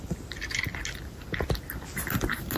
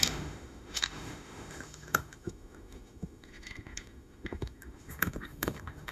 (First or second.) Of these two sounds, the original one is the first